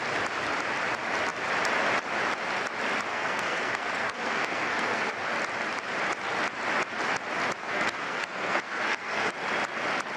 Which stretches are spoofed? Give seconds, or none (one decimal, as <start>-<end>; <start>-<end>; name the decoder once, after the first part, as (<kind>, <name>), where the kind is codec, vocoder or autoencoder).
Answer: 3.1-5.1 (codec, SNAC); 7.6-9.3